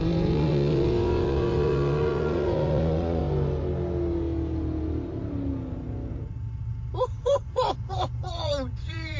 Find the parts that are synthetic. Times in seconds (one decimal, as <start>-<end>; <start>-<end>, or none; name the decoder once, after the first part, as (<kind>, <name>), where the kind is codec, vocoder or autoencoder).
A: 0.0-3.2 (vocoder, Vocos); 7.2-9.2